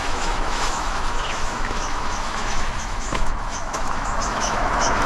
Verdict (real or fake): fake